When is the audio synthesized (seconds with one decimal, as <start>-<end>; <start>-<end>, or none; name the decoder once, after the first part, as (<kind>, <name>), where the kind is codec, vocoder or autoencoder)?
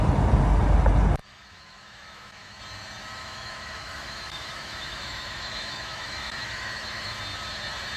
1.2-2.6 (autoencoder, DAC-VAE); 3.2-7.2